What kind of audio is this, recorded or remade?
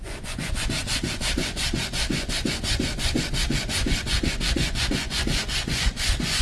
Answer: remade